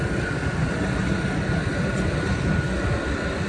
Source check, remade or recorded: recorded